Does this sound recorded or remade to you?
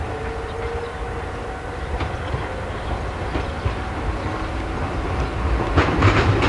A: recorded